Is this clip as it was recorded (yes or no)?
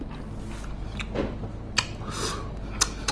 yes